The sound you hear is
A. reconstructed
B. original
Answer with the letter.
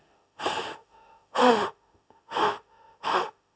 A